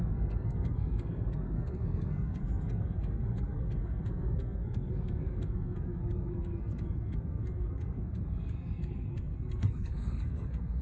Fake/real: fake